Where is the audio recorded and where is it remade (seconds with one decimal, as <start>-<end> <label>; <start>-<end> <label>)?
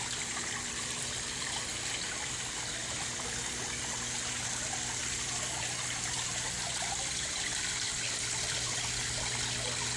0.0-10.0 recorded